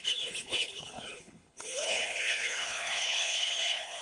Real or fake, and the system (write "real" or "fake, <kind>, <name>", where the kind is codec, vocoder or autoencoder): fake, codec, HILCodec